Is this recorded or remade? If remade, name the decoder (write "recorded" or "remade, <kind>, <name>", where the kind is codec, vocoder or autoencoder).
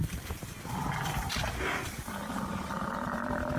remade, vocoder, BigVGAN v2